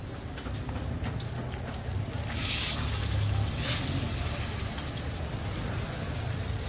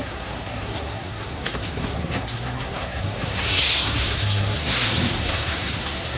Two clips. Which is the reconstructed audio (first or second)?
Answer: second